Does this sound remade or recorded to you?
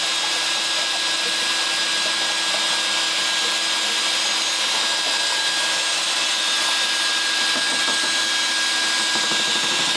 recorded